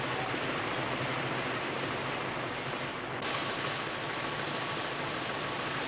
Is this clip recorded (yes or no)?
yes